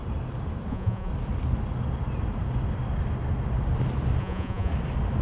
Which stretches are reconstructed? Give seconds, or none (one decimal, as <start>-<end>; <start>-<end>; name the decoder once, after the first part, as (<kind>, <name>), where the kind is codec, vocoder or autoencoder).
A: 0.7-1.1 (vocoder, Vocos); 4.2-4.7